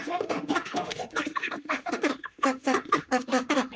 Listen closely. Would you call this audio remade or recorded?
remade